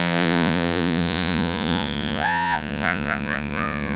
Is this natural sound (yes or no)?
no